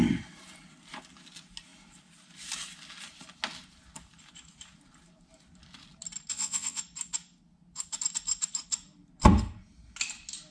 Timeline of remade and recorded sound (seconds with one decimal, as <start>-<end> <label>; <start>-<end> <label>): 0.0-6.3 recorded; 6.3-6.8 remade; 6.8-10.5 recorded